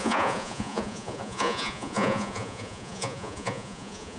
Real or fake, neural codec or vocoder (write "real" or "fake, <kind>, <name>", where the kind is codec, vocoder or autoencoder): fake, vocoder, Vocos